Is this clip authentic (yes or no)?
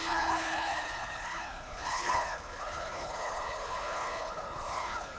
no